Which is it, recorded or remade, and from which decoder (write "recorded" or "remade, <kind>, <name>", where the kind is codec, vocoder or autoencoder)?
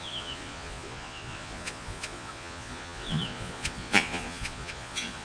remade, vocoder, Vocos